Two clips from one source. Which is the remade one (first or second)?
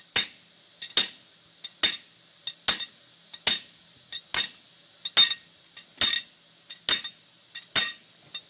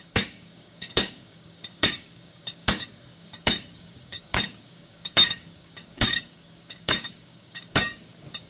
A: second